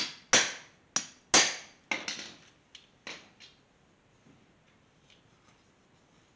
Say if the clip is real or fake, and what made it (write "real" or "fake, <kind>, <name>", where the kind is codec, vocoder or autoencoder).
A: real